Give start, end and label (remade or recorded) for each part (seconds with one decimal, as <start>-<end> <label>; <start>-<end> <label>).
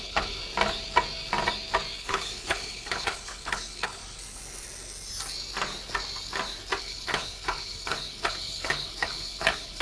0.0-0.4 remade; 0.4-2.0 recorded; 2.0-4.0 remade; 4.0-6.8 recorded; 6.8-9.8 remade